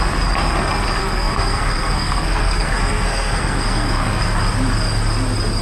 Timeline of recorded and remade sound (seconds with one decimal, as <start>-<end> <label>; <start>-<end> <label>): 0.0-1.0 recorded; 1.0-4.2 remade; 4.2-5.6 recorded